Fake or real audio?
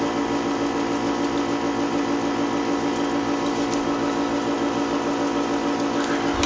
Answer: real